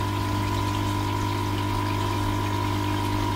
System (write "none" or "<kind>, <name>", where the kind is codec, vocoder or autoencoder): none